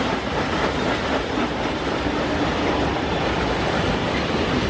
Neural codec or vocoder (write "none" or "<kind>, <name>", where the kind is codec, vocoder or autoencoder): none